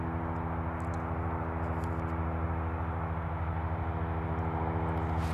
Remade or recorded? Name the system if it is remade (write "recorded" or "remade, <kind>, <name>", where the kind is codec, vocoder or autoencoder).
recorded